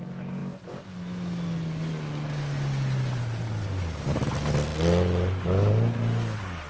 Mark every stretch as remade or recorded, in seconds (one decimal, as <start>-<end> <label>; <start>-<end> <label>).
0.0-6.7 recorded